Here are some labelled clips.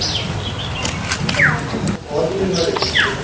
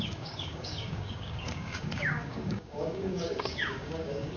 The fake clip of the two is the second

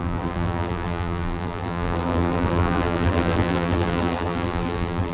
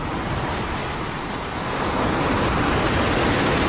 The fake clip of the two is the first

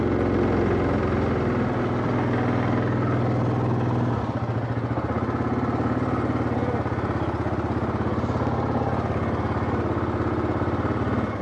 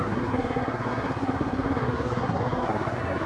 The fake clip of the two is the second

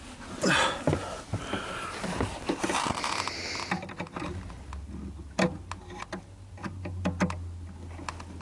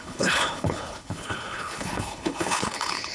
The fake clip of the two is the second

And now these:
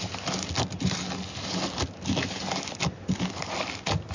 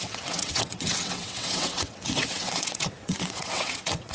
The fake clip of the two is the second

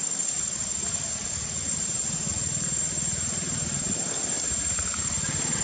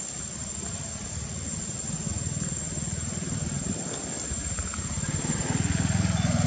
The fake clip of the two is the first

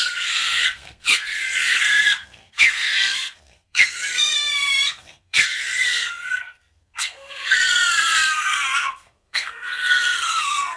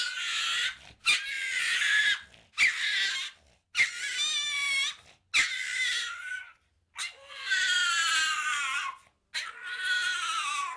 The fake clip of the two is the first